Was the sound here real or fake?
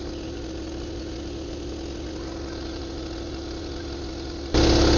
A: real